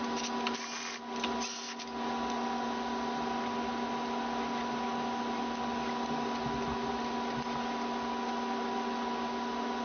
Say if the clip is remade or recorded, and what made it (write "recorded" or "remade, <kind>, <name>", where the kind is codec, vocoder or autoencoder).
recorded